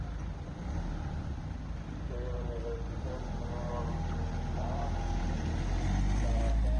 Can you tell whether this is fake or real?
real